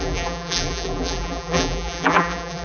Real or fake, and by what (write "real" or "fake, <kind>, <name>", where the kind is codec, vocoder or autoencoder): fake, vocoder, BigVGAN v2